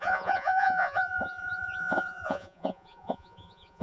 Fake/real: fake